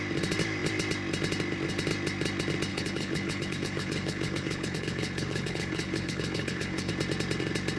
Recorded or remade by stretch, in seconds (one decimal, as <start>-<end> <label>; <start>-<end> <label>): 0.0-2.7 recorded; 2.7-6.9 remade; 6.9-7.8 recorded